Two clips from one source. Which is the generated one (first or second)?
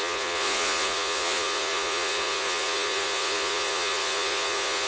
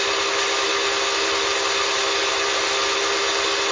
first